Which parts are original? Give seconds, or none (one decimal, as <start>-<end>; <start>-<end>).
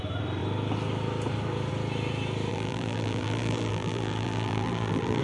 0.0-2.5